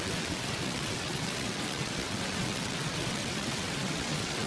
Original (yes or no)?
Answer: no